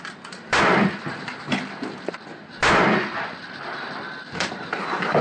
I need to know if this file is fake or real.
fake